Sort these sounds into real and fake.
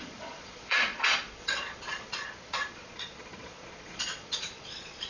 fake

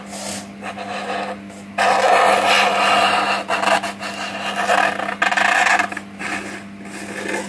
real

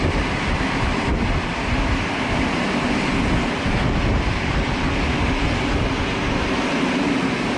real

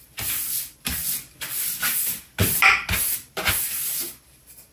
real